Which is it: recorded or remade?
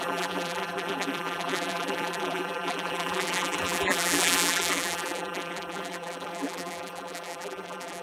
remade